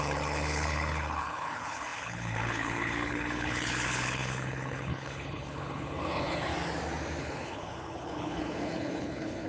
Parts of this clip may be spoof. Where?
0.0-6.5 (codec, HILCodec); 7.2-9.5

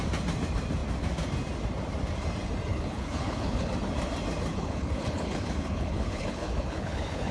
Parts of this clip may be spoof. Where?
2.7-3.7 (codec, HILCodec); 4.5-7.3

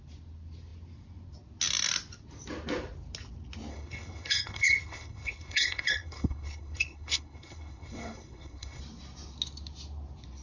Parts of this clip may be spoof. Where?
3.7-8.8 (codec, HILCodec)

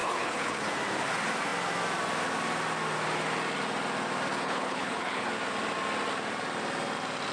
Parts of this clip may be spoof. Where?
0.0-0.7 (codec, HILCodec); 4.3-5.3